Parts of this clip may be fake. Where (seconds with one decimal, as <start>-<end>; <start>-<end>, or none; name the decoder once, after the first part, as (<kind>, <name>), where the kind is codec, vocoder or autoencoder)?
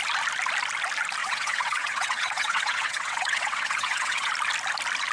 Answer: 1.2-4.3 (vocoder, WaveNeXt)